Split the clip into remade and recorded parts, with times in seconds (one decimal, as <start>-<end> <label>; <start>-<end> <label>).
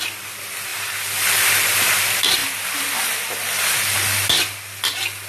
0.0-5.3 recorded